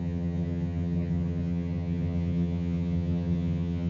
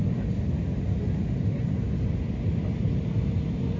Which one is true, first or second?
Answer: second